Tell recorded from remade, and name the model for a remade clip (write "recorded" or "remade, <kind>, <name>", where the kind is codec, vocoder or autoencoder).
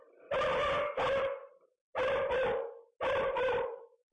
recorded